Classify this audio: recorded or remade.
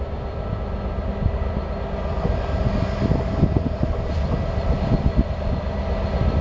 recorded